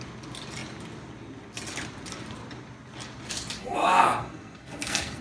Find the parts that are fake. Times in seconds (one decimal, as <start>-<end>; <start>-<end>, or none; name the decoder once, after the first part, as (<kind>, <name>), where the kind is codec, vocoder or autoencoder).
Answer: 3.6-5.2 (codec, SNAC)